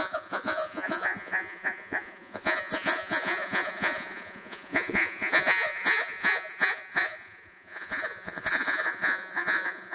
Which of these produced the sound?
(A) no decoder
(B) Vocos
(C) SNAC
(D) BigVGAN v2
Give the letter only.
B